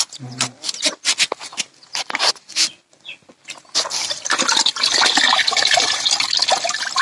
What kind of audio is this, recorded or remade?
recorded